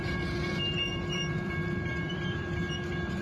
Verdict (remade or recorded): remade